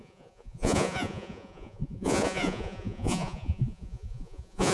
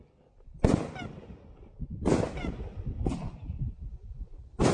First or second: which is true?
second